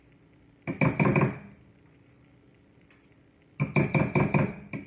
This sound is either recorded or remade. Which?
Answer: recorded